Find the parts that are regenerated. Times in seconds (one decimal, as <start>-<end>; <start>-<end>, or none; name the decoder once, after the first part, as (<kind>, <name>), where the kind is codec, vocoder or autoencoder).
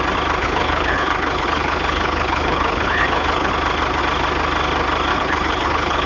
0.4-3.5 (codec, HILCodec); 5.1-6.1